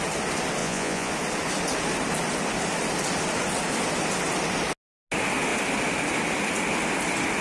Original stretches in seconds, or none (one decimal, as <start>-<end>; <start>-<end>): 0.0-0.6; 1.1-7.4